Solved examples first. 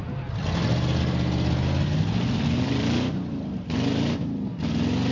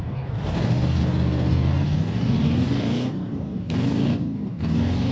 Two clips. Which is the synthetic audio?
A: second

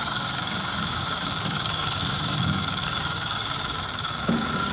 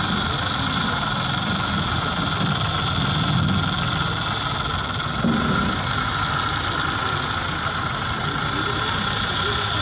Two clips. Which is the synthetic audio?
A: first